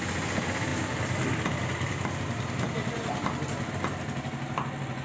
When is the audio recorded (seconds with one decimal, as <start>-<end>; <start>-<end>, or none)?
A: 0.0-5.0